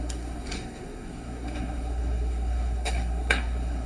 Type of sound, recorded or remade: remade